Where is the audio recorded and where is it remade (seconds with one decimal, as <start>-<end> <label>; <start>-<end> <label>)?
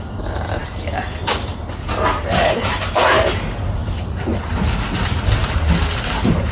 0.0-6.5 recorded